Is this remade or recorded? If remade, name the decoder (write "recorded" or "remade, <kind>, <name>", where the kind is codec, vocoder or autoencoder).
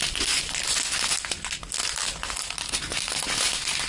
recorded